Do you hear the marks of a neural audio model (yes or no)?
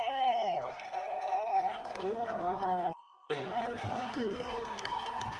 yes